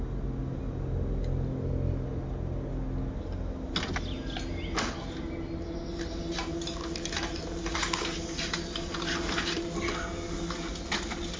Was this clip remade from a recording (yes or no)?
no